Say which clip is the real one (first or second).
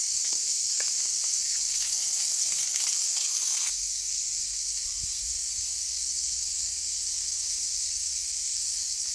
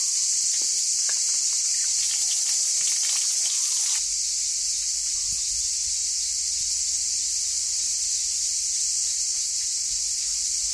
second